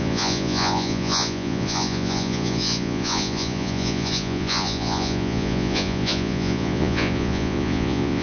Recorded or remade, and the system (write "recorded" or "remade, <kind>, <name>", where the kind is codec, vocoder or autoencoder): remade, vocoder, Vocos